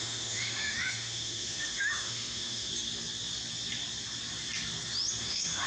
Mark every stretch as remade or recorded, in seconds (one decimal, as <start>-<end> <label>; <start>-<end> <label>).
0.0-2.7 remade; 2.7-5.2 recorded; 5.2-5.7 remade